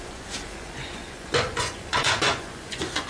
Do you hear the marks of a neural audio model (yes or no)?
yes